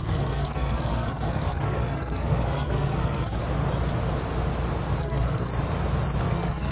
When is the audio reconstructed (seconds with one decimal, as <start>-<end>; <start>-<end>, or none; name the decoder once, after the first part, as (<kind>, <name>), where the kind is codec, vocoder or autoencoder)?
0.0-3.4 (codec, SNAC); 5.0-5.5; 6.2-6.7